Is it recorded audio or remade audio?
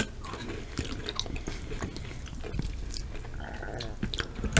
recorded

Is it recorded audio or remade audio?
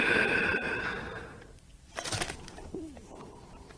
remade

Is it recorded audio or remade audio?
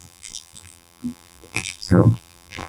remade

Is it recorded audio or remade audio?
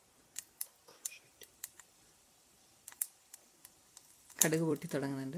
remade